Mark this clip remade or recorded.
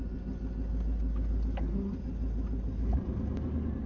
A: recorded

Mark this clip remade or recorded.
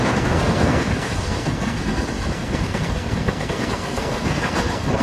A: remade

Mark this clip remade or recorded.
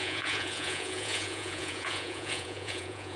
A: remade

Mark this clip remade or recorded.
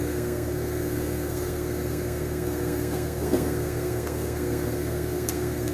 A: remade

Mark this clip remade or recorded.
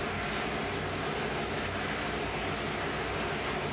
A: recorded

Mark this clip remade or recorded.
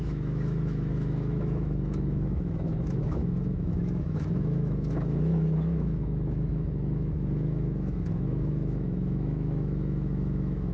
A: remade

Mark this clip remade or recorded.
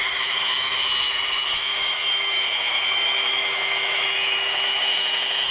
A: remade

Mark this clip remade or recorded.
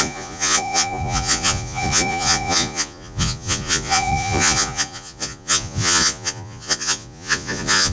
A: remade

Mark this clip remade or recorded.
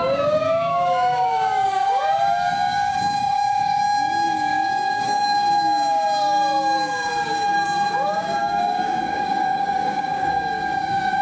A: remade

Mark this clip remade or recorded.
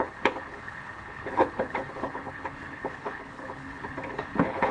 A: remade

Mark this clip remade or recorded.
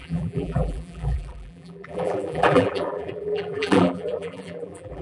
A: remade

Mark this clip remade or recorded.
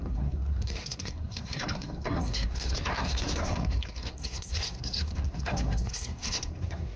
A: remade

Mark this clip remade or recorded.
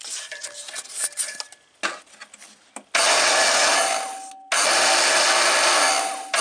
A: recorded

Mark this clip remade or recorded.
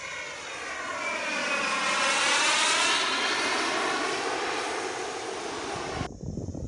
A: recorded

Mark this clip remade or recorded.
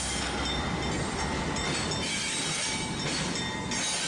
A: recorded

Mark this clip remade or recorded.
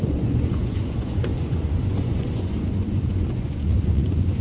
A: remade